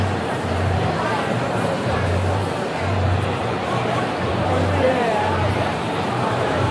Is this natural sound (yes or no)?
no